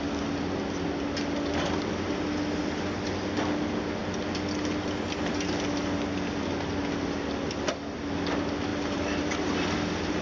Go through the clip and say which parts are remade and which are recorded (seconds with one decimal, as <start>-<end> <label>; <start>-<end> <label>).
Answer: 0.0-8.7 recorded; 8.7-9.5 remade; 9.5-10.2 recorded

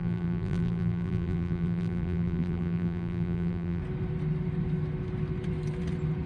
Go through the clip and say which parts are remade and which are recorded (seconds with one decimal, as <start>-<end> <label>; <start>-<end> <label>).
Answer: 0.0-3.8 remade; 3.8-6.3 recorded

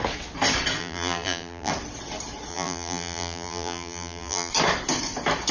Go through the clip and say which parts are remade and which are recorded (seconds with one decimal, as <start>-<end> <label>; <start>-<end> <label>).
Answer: 0.0-0.8 recorded; 0.8-1.7 remade; 1.7-2.5 recorded; 2.5-4.5 remade; 4.5-5.5 recorded

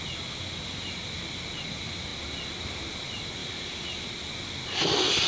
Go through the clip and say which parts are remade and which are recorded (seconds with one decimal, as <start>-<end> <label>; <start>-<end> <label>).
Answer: 0.0-3.4 recorded; 3.4-4.3 remade; 4.3-5.3 recorded